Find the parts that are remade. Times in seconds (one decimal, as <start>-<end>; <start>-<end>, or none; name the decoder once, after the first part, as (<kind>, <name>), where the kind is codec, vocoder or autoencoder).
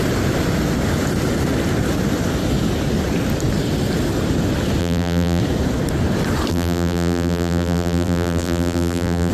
4.8-5.4 (vocoder, BigVGAN v2); 6.5-9.3